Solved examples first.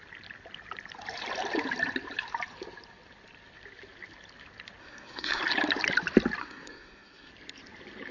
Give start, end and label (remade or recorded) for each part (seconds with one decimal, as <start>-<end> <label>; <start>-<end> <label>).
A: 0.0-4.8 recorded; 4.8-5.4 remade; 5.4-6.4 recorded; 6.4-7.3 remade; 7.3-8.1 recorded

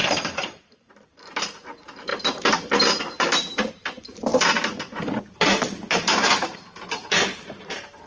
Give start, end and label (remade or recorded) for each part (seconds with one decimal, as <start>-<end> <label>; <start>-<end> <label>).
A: 0.0-0.6 recorded; 0.6-8.1 remade

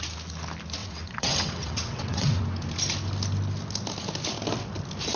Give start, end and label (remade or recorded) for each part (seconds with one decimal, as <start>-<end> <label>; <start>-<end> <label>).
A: 0.0-0.8 recorded; 0.8-2.4 remade; 2.4-5.2 recorded

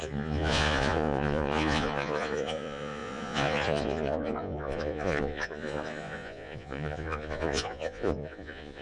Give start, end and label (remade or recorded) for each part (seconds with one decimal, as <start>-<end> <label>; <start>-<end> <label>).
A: 0.0-8.8 remade

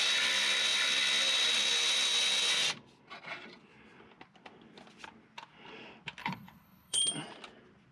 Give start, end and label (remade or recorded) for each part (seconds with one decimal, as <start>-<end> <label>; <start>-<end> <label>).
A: 0.0-6.2 recorded; 6.2-7.0 remade; 7.0-7.9 recorded

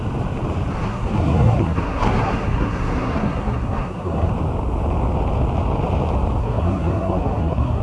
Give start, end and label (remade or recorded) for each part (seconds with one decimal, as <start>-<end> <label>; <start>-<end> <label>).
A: 0.0-0.8 recorded; 0.8-4.3 remade; 4.3-6.4 recorded; 6.4-7.8 remade

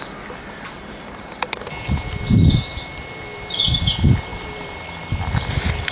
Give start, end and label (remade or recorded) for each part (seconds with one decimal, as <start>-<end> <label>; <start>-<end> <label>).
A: 0.0-5.9 recorded